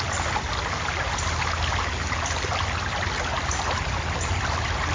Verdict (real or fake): real